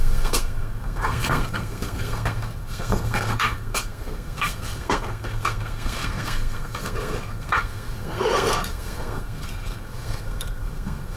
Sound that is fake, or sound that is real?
fake